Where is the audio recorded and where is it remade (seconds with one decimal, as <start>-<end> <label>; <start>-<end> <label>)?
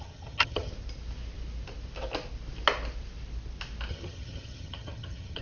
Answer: 0.0-0.7 remade; 0.7-3.9 recorded; 3.9-5.4 remade